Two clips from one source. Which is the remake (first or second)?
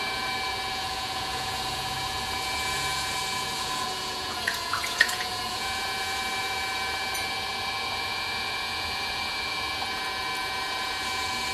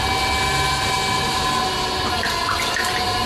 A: first